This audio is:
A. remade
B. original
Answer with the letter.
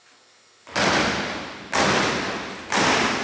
B